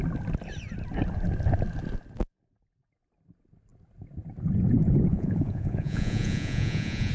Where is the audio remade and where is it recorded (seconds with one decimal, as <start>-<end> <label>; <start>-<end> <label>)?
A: 0.0-5.1 recorded; 5.1-7.1 remade